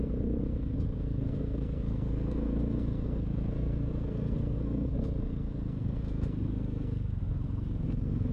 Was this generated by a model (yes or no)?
yes